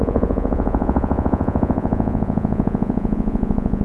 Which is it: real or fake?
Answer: fake